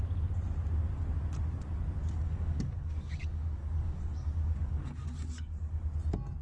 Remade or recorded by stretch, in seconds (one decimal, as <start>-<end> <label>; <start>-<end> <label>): 0.0-2.0 recorded; 2.0-5.8 remade; 5.8-6.4 recorded